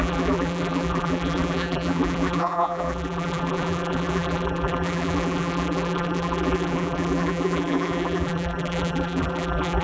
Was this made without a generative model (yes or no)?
no